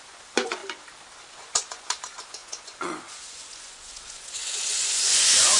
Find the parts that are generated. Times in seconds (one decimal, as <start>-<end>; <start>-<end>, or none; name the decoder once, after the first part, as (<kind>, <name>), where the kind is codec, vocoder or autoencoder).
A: 0.0-0.6 (vocoder, Vocos); 1.3-5.6